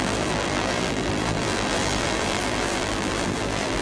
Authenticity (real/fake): fake